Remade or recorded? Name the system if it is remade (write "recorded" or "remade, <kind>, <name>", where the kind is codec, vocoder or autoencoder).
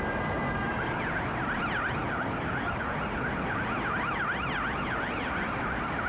recorded